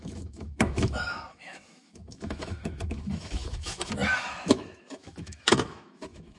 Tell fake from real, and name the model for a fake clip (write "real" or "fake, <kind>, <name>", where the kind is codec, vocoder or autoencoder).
fake, autoencoder, DAC-VAE